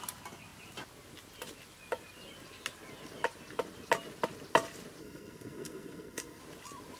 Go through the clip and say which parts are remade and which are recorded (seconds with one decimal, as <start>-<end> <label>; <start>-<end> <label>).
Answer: 0.0-5.0 recorded; 5.0-6.4 remade; 6.4-7.0 recorded